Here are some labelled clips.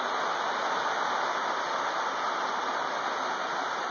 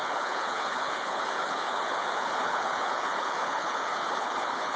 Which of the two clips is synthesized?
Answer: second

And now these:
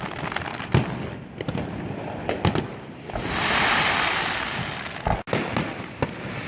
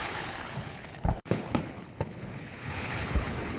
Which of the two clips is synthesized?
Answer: second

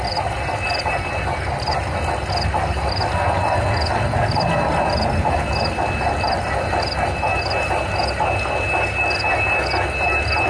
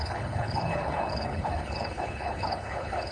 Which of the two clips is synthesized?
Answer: second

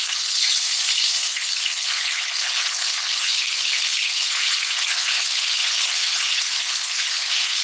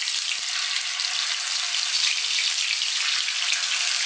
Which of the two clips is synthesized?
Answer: first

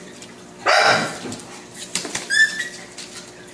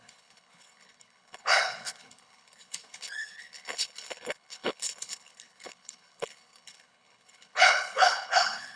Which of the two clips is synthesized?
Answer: second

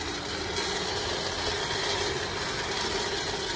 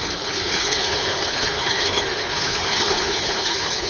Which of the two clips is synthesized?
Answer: second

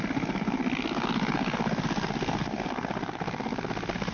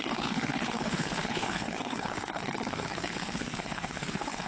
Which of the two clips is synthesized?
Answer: second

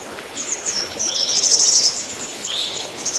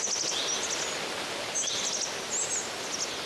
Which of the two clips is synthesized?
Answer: first